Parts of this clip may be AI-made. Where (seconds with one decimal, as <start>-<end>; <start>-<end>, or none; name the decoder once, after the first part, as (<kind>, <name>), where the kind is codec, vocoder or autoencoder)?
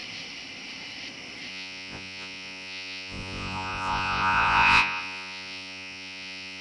1.5-6.6 (vocoder, Vocos)